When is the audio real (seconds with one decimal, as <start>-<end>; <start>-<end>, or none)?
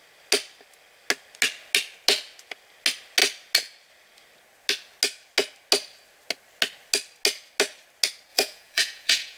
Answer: 0.0-8.3